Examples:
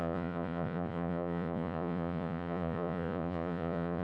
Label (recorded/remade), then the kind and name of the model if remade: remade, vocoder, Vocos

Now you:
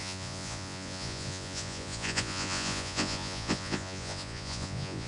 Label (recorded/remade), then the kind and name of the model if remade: remade, vocoder, Vocos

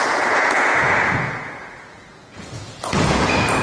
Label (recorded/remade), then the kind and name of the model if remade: remade, vocoder, Vocos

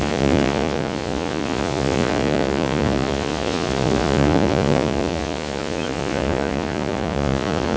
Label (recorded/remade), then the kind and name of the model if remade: remade, vocoder, Vocos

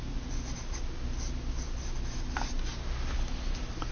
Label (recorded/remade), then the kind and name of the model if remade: recorded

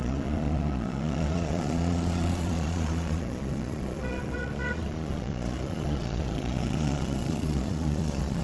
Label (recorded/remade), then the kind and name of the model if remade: remade, vocoder, Vocos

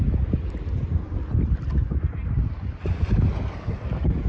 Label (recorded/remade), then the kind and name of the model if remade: recorded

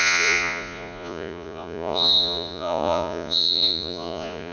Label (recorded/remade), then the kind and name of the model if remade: remade, vocoder, Vocos